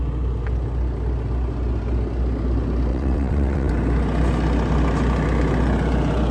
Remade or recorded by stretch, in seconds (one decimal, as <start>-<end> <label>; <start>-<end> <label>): 0.0-2.9 recorded; 2.9-3.7 remade; 3.7-6.3 recorded